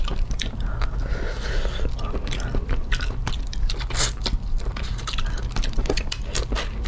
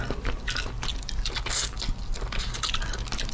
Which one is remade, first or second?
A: first